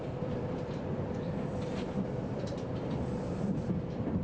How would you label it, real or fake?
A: fake